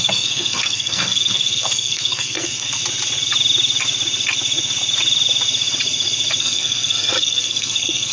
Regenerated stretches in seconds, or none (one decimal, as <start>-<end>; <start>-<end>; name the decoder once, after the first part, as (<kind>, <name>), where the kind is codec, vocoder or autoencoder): 0.0-2.8 (codec, SNAC); 6.4-8.1